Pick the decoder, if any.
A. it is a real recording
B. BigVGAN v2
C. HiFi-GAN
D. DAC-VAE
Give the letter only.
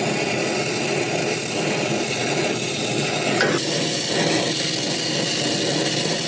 A